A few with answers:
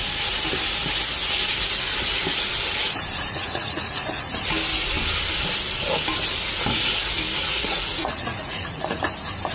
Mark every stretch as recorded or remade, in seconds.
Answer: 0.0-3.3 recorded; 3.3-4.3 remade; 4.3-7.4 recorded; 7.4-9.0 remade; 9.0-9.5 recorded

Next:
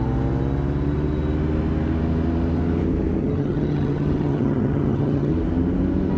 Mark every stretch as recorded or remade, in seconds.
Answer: 0.0-3.2 recorded; 3.2-5.3 remade; 5.3-6.2 recorded

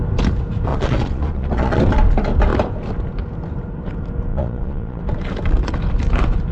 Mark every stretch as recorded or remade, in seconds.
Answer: 0.0-0.7 recorded; 0.7-1.8 remade; 1.8-4.3 recorded; 4.3-5.0 remade; 5.0-6.5 recorded

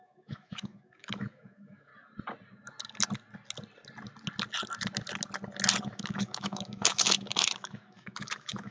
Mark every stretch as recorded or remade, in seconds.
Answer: 0.0-1.9 remade; 1.9-5.8 recorded; 5.8-8.7 remade

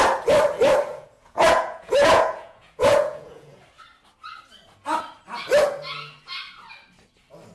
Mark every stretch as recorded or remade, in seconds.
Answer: 0.0-0.9 recorded; 0.9-3.6 remade; 3.6-7.5 recorded

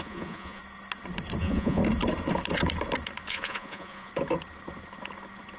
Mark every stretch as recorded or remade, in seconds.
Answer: 0.0-0.6 remade; 0.6-1.4 recorded; 1.4-1.8 remade; 1.8-3.3 recorded; 3.3-4.1 remade; 4.1-5.6 recorded